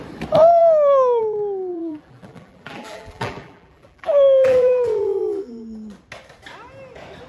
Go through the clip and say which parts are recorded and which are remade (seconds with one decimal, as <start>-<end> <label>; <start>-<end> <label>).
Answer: 0.0-1.7 recorded; 1.7-5.5 remade; 5.5-7.3 recorded